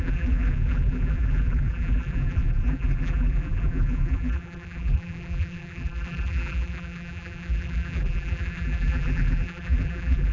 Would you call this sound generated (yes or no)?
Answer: yes